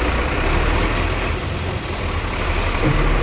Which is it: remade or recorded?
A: remade